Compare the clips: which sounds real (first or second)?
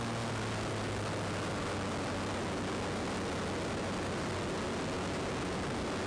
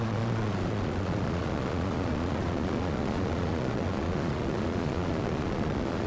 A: first